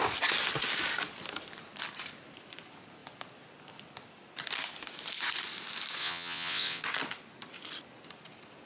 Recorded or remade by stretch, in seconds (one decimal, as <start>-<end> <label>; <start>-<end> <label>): 0.0-6.0 recorded; 6.0-6.8 remade; 6.8-8.7 recorded